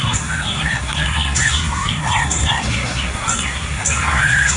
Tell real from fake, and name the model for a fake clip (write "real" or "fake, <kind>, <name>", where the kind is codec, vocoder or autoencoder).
fake, codec, SNAC